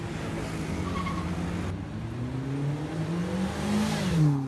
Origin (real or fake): real